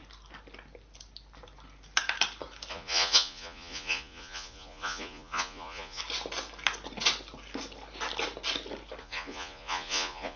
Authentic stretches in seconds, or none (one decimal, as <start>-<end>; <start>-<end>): 0.0-2.7; 6.0-9.0

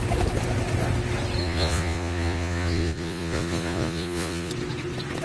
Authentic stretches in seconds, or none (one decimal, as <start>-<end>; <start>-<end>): 0.0-1.4; 4.5-5.2

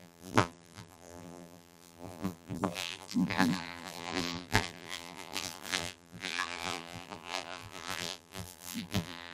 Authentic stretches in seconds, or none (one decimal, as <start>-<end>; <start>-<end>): none

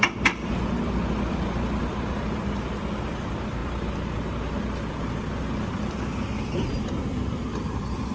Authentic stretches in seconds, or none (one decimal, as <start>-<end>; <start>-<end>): 0.0-8.1

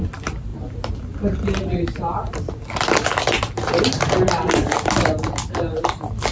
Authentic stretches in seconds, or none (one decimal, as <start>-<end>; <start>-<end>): 0.0-6.3

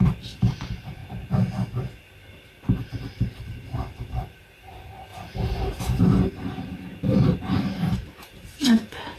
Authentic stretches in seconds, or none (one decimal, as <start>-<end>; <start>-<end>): 1.0-2.9

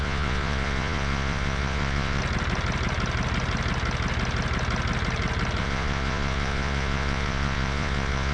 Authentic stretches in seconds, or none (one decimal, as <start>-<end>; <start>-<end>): 2.2-5.6

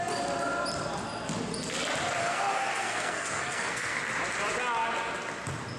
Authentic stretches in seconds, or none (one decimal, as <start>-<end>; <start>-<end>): 0.0-2.2; 4.0-5.8